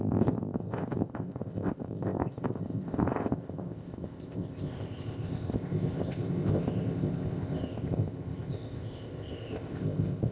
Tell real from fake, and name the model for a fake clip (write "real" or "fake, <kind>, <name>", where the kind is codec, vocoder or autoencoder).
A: fake, codec, ZipCodec